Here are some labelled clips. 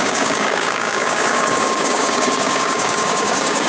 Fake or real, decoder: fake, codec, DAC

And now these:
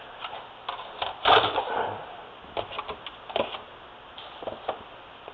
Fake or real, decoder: real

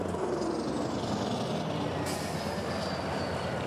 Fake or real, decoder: real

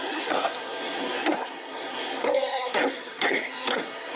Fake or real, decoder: fake, codec, SNAC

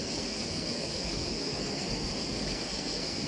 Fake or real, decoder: fake, codec, SNAC